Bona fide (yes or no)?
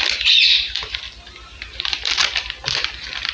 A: yes